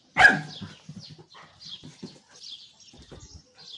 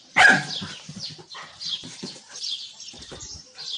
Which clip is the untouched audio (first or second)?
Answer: first